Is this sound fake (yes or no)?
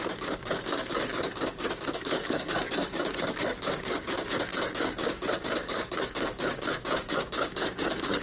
yes